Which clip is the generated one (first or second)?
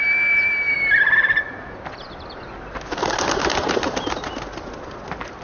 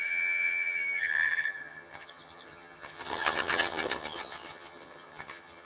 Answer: second